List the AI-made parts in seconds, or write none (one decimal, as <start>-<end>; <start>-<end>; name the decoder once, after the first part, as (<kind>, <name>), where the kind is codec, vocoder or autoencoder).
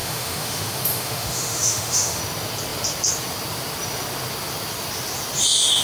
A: 0.0-2.2 (autoencoder, DAC-VAE)